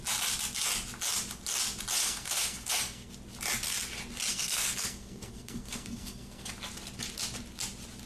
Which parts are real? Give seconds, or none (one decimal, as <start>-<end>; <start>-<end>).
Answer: 0.0-2.0; 3.1-4.3; 6.5-8.1